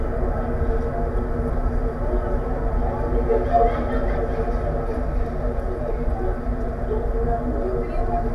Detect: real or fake real